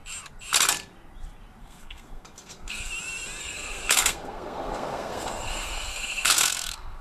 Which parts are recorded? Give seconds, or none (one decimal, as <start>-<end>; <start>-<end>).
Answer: 0.0-1.6; 2.9-3.4